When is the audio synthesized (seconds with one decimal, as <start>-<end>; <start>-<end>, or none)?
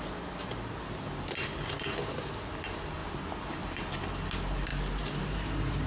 none